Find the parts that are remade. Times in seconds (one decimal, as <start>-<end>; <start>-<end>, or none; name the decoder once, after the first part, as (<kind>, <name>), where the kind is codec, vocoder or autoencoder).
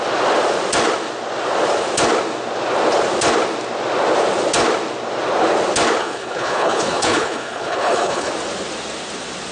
6.0-8.3 (codec, HILCodec)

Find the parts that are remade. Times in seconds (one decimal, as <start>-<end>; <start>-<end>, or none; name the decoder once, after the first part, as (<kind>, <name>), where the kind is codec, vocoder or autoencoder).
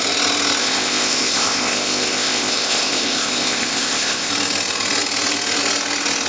0.6-4.3 (codec, ZipCodec)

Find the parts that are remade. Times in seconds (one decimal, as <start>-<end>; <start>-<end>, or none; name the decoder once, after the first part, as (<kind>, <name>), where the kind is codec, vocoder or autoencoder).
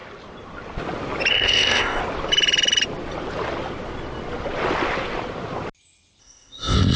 1.3-2.0 (codec, ZipCodec); 6.2-7.0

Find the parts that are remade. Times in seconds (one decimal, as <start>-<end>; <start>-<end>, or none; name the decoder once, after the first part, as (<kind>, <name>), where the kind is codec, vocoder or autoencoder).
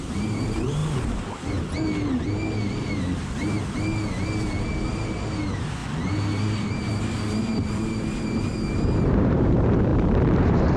0.0-0.8 (vocoder, BigVGAN v2); 4.9-5.8; 6.7-10.8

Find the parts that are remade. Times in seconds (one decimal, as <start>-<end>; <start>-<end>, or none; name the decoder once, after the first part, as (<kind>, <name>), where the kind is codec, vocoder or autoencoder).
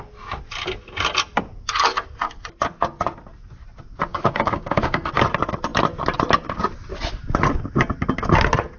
4.1-5.1 (codec, DAC)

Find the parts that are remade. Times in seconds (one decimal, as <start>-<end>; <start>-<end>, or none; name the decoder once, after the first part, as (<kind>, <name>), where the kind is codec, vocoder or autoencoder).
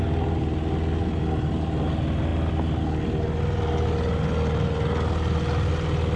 none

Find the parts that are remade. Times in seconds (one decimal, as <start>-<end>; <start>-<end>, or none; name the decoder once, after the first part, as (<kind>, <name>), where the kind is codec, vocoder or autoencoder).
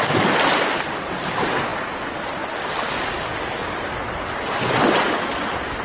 none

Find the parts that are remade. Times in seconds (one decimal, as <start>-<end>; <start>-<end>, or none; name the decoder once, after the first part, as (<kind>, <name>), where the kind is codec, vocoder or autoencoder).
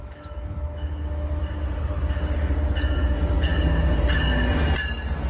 0.0-1.4 (autoencoder, DAC-VAE)